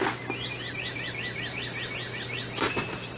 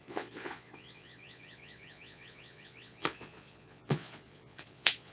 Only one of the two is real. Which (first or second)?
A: first